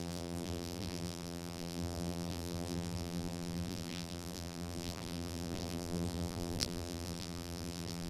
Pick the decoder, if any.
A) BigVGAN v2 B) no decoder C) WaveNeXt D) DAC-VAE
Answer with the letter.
A